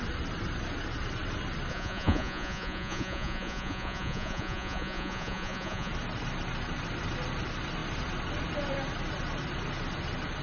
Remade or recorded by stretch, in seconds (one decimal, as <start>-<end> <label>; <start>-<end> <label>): 0.0-1.7 recorded; 1.7-5.9 remade; 5.9-10.4 recorded